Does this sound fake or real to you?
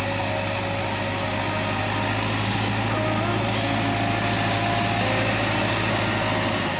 real